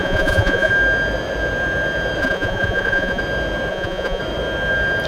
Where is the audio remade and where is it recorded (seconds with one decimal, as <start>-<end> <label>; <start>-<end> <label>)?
0.0-0.7 remade; 0.7-2.2 recorded; 2.2-3.2 remade; 3.2-3.7 recorded; 3.7-4.2 remade; 4.2-5.1 recorded